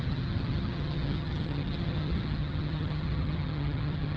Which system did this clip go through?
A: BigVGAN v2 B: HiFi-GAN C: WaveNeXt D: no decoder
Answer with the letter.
B